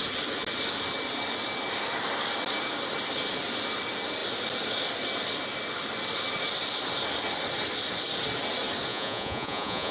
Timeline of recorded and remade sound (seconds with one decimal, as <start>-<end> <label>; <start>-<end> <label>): 0.0-8.9 recorded; 8.9-9.9 remade